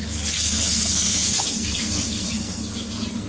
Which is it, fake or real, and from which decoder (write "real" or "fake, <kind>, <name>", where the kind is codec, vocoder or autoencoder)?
fake, codec, SNAC